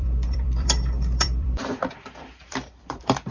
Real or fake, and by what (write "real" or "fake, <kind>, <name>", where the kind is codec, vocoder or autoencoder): fake, vocoder, BigVGAN v2